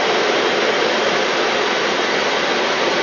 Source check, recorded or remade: recorded